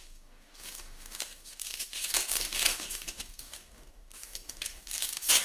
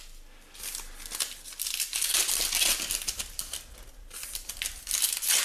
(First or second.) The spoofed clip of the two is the first